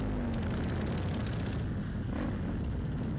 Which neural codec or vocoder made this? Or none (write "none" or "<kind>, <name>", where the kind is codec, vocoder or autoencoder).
none